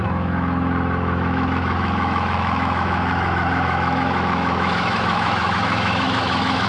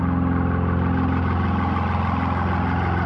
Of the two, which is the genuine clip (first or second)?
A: second